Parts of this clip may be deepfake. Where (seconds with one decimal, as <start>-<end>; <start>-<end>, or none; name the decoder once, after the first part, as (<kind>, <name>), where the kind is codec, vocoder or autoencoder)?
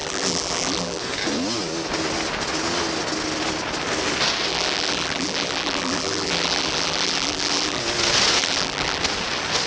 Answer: 0.0-1.0 (vocoder, BigVGAN v2); 4.5-7.8; 8.4-9.0